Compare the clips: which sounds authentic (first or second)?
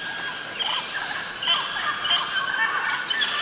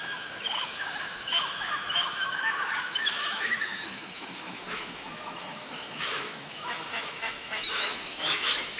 first